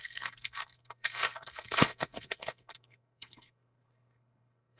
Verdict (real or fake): fake